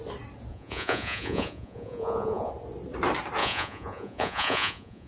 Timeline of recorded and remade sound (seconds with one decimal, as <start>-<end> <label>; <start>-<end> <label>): 0.0-0.5 recorded; 0.5-2.5 remade; 2.5-3.4 recorded; 3.4-5.1 remade